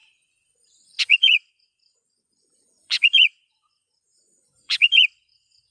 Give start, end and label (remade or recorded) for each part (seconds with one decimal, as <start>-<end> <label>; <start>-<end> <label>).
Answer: 0.0-5.7 remade